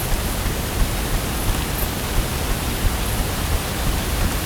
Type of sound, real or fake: real